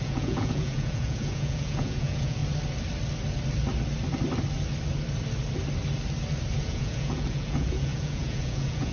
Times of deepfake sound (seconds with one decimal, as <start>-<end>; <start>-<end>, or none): 0.0-2.4; 6.6-8.9